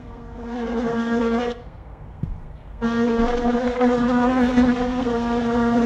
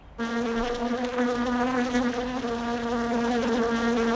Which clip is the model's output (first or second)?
first